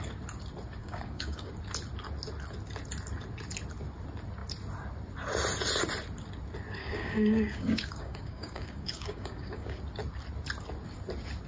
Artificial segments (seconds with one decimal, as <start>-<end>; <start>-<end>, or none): 0.8-1.5; 6.8-9.8